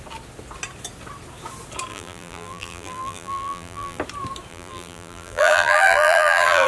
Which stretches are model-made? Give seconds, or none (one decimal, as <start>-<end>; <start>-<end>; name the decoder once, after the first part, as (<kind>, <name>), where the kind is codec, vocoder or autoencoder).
1.9-4.0 (vocoder, BigVGAN v2); 4.5-6.7